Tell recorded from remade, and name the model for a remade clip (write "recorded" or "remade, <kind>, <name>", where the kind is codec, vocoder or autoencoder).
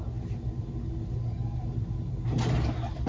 recorded